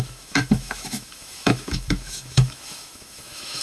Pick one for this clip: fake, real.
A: fake